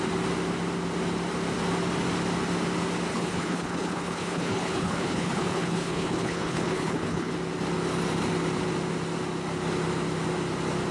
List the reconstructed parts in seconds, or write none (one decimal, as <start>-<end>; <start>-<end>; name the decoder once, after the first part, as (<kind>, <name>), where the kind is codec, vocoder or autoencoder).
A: 3.1-7.3 (codec, HILCodec)